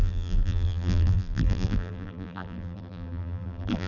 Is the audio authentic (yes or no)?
no